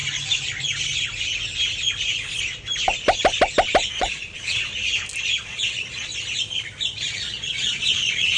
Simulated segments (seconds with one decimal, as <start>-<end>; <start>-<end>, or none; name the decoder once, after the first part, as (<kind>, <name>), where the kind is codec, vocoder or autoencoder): 3.9-4.7 (vocoder, Vocos); 5.4-6.1; 7.0-8.4